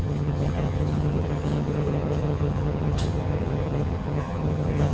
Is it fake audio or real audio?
fake